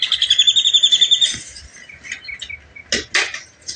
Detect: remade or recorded recorded